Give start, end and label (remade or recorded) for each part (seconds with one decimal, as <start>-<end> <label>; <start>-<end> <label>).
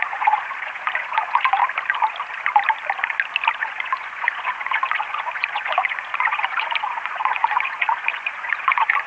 0.0-1.6 remade; 1.6-3.6 recorded; 3.6-9.1 remade